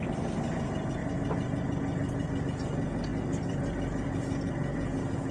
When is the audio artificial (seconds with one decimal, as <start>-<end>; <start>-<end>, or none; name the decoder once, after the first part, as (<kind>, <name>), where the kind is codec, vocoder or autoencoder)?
none